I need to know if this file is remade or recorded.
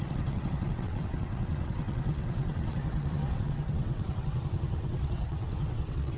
remade